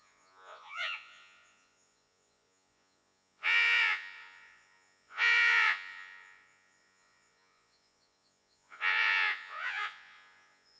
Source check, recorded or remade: remade